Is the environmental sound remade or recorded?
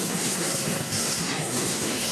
remade